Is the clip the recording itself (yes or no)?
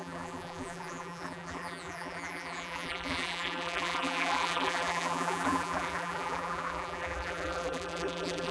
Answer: no